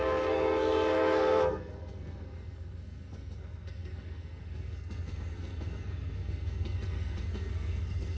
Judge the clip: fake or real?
fake